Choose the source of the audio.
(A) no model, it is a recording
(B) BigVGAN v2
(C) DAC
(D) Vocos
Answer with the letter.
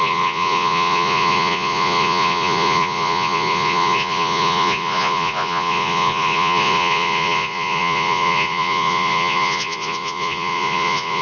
D